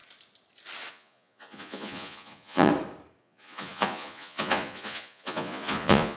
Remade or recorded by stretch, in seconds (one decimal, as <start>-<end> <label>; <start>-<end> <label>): 0.0-0.9 recorded; 0.9-2.7 remade; 2.7-3.2 recorded; 3.2-6.2 remade